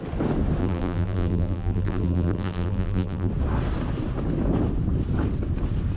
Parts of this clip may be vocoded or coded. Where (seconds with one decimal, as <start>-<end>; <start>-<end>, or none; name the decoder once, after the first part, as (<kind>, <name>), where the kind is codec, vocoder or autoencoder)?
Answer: 0.6-3.3 (vocoder, BigVGAN v2)